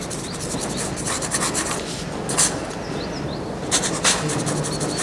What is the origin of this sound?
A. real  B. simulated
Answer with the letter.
A